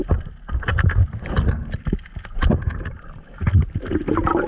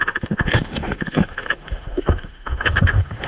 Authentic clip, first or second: first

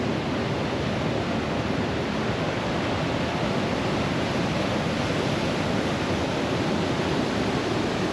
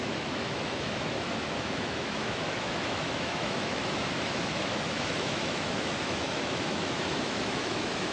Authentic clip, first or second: first